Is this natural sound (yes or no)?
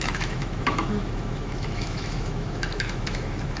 no